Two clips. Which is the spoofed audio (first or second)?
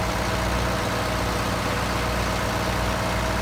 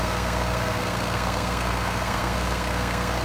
second